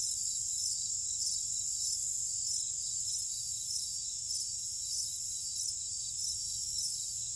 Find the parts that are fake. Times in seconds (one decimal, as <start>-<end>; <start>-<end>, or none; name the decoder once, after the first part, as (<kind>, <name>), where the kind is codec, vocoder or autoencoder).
none